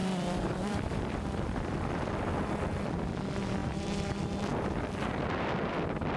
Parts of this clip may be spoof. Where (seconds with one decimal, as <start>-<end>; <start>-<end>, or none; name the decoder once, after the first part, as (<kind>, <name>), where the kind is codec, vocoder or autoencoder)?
0.0-1.9 (vocoder, BigVGAN v2); 3.6-4.1